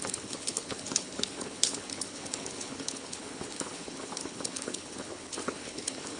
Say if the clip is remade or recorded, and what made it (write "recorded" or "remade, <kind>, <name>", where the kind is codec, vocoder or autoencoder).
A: remade, codec, HILCodec